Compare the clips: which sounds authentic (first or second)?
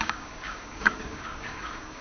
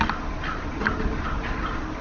second